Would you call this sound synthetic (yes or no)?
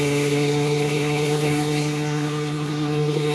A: yes